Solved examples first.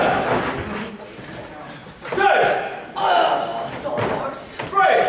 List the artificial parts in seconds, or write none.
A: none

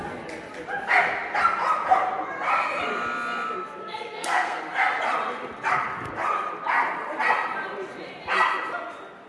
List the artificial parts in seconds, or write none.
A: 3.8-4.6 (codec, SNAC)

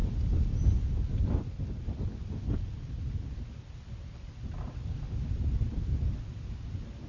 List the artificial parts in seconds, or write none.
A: none

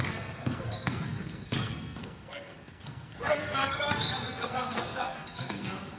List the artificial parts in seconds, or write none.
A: 0.0-6.0 (codec, SNAC)